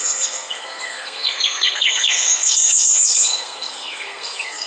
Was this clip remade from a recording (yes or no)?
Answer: yes